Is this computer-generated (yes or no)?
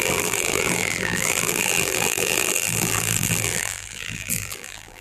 yes